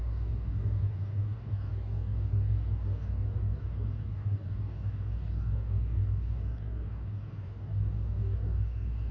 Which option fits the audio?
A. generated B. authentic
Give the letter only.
A